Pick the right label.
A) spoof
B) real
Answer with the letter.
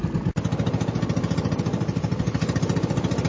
B